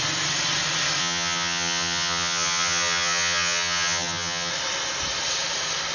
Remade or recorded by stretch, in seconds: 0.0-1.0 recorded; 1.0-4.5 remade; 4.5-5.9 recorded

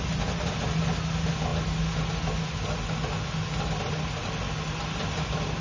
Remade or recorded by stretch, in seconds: 0.0-5.6 recorded

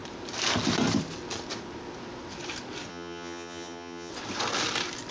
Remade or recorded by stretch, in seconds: 0.0-2.9 recorded; 2.9-4.1 remade; 4.1-5.1 recorded